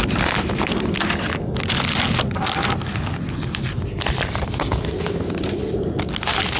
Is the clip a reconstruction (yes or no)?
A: no